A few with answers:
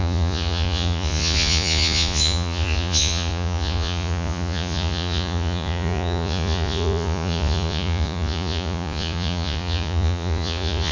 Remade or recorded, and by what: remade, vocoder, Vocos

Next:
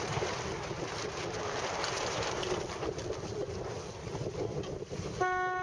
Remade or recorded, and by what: recorded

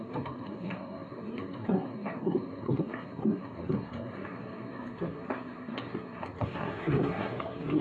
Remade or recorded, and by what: remade, codec, SNAC